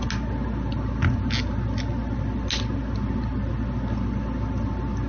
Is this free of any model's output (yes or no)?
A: yes